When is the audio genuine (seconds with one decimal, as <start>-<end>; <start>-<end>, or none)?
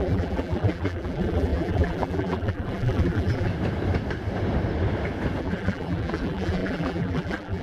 3.5-5.4